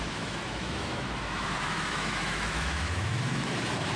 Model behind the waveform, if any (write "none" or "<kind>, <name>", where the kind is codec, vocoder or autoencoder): autoencoder, DAC-VAE